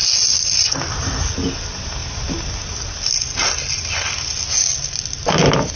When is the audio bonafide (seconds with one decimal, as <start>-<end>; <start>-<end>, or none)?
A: 0.0-5.8